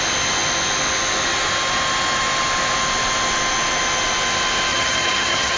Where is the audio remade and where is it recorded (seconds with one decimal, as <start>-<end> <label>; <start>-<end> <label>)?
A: 0.0-4.7 recorded; 4.7-5.6 remade